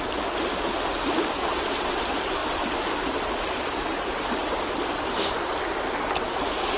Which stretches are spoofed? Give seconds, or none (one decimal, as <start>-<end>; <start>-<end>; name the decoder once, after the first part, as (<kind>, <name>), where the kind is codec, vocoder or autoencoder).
1.4-2.0 (vocoder, WaveNeXt)